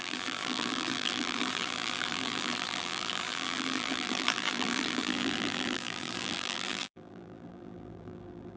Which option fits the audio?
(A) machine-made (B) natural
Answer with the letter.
A